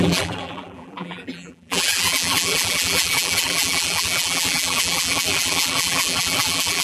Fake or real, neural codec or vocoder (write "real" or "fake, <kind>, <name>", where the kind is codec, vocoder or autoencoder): fake, vocoder, BigVGAN v2